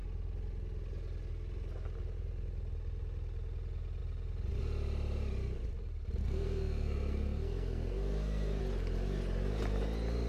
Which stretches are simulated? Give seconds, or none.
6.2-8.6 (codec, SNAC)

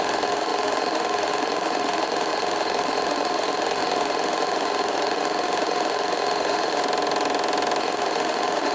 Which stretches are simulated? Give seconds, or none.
0.0-6.8 (autoencoder, DAC-VAE); 7.8-8.7

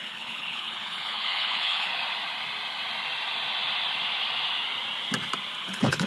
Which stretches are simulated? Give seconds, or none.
0.0-1.9 (codec, HILCodec); 5.6-6.1